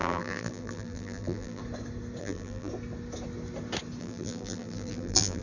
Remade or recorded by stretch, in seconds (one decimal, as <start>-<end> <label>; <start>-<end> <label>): 0.0-1.6 remade; 1.6-2.2 recorded; 2.2-2.7 remade; 2.7-4.0 recorded; 4.0-5.4 remade